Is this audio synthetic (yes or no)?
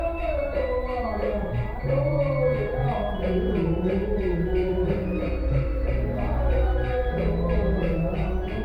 yes